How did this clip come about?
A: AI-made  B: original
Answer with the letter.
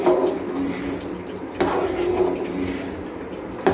B